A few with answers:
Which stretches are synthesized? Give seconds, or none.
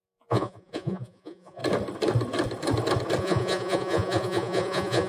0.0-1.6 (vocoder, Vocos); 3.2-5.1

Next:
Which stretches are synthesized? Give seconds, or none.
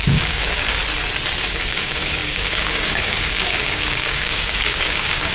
0.0-0.8 (codec, DAC); 1.4-5.3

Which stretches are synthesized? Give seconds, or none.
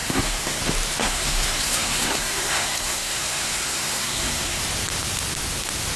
0.0-0.6 (codec, SNAC); 1.0-4.6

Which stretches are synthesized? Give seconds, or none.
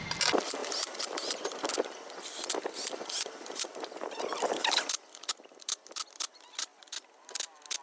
0.6-5.3 (vocoder, BigVGAN v2)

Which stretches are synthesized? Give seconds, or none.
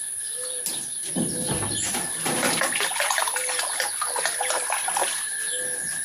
none